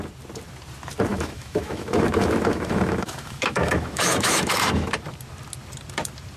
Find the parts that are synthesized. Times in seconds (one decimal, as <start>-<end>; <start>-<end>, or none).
1.1-4.9